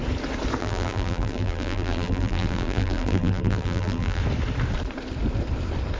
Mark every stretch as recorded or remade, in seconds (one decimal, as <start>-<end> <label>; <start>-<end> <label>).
0.0-0.6 recorded; 0.6-4.2 remade; 4.2-6.0 recorded

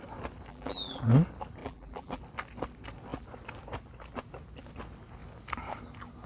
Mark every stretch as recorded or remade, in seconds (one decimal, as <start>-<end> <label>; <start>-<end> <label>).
0.0-0.5 recorded; 0.5-1.0 remade; 1.0-1.6 recorded; 1.6-2.2 remade; 2.2-6.3 recorded

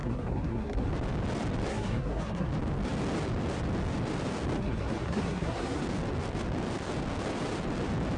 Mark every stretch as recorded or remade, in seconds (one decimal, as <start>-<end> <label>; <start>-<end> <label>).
0.0-0.9 remade; 0.9-1.7 recorded; 1.7-2.5 remade; 2.5-4.6 recorded; 4.6-5.8 remade; 5.8-8.2 recorded

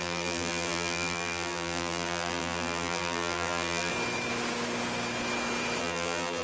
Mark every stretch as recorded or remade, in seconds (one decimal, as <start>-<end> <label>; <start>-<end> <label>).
0.0-3.9 remade; 3.9-5.8 recorded; 5.8-6.4 remade

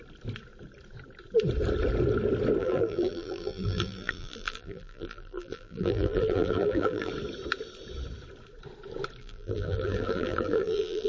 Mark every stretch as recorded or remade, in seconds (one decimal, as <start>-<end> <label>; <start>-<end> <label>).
0.0-2.6 recorded; 2.6-7.1 remade; 7.1-9.2 recorded; 9.2-11.1 remade

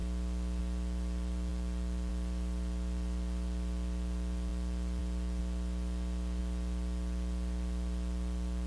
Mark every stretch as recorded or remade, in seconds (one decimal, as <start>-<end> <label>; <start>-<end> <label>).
0.0-0.6 recorded; 0.6-4.5 remade; 4.5-5.0 recorded; 5.0-5.4 remade; 5.4-6.4 recorded; 6.4-8.7 remade

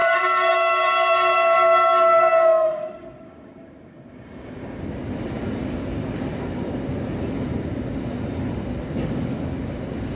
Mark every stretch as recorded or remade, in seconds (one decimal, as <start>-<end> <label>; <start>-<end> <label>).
0.0-4.8 remade; 4.8-10.1 recorded

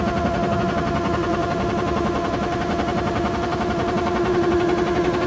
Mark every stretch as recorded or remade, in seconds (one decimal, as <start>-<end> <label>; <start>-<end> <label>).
0.0-1.3 recorded; 1.3-4.5 remade; 4.5-5.3 recorded